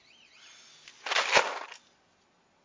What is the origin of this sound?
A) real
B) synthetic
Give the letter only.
A